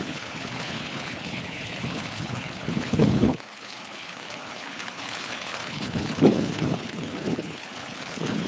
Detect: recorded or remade remade